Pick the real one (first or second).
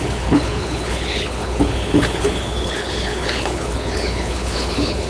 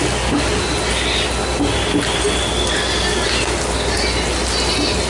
second